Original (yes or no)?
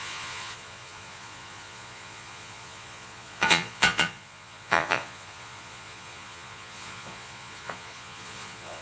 no